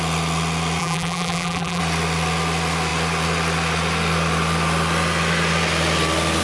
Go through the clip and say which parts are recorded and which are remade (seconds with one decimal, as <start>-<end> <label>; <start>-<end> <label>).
0.0-0.8 recorded; 0.8-1.8 remade; 1.8-6.4 recorded